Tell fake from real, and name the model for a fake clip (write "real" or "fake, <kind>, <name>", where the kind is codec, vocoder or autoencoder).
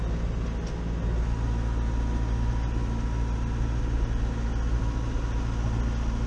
real